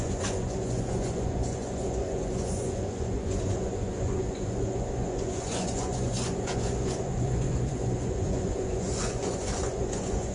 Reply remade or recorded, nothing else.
remade